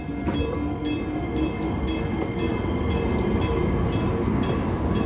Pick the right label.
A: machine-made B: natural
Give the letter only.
B